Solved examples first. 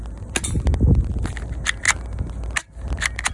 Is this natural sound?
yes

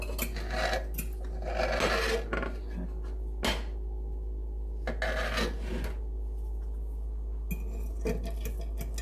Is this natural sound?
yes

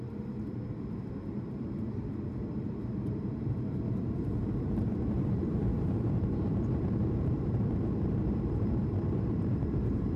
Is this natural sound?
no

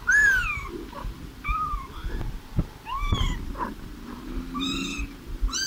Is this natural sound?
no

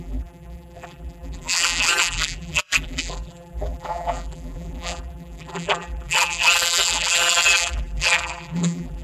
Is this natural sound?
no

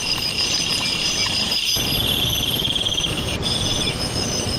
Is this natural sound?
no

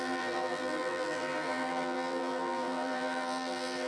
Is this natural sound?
no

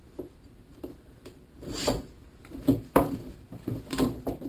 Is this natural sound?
no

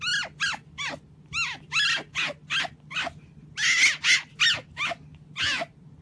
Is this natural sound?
yes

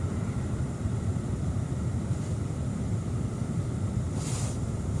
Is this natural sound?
no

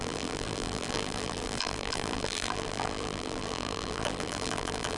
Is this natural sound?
no